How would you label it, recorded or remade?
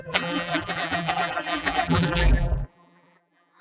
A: remade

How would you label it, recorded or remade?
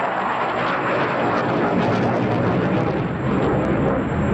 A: recorded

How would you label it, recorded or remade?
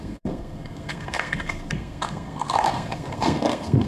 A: remade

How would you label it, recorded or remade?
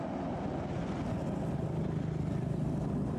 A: recorded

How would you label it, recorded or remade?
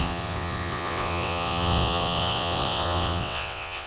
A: remade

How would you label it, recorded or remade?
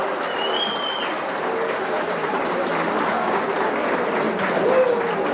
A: recorded